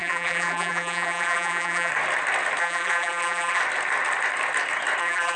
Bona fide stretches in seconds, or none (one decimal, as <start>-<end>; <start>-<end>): 1.9-2.6; 3.6-5.0